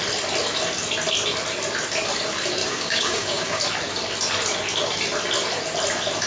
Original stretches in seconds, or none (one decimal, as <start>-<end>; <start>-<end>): 0.0-2.6; 3.6-6.3